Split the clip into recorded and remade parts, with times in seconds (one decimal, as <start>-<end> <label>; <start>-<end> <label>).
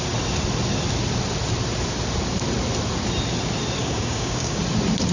0.0-3.8 recorded; 3.8-4.6 remade; 4.6-5.1 recorded